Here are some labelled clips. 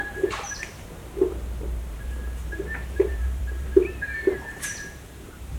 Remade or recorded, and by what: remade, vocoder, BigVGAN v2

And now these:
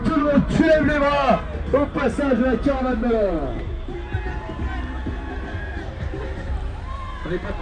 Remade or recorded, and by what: remade, vocoder, BigVGAN v2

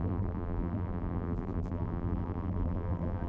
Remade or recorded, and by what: remade, vocoder, BigVGAN v2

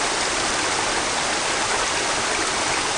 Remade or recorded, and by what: remade, vocoder, BigVGAN v2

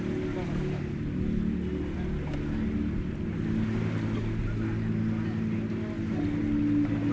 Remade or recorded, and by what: recorded